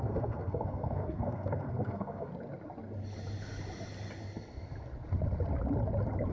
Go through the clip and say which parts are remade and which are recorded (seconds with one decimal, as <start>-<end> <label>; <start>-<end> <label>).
0.0-2.3 remade; 2.3-6.3 recorded